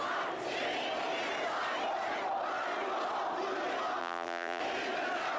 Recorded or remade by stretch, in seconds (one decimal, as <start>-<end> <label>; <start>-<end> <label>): 0.0-4.0 recorded; 4.0-4.6 remade; 4.6-5.4 recorded